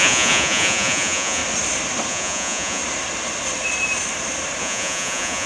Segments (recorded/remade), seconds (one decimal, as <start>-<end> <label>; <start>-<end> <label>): 0.0-1.4 remade; 1.4-2.1 recorded; 2.1-2.8 remade; 2.8-4.6 recorded; 4.6-5.5 remade